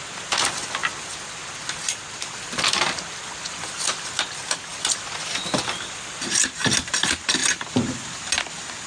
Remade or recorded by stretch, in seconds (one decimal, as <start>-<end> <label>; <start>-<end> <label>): 0.0-8.9 recorded